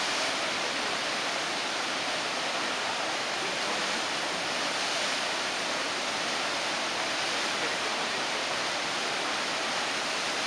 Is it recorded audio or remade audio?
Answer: remade